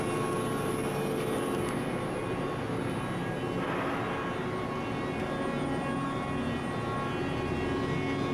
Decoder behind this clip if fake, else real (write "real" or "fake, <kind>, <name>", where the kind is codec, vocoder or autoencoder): real